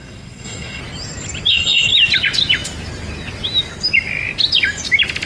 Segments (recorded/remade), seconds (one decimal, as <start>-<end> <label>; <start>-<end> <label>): 0.0-0.8 remade; 0.8-1.5 recorded; 1.5-1.9 remade; 1.9-5.3 recorded